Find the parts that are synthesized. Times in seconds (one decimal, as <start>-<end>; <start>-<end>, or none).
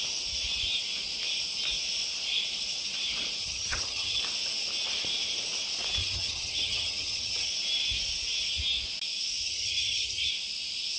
3.4-4.2; 6.0-7.5; 9.4-10.3